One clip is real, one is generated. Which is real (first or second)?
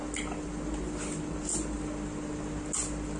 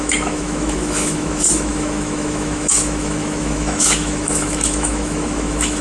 first